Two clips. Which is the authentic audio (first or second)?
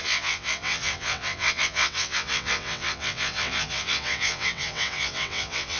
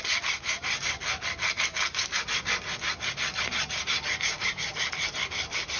second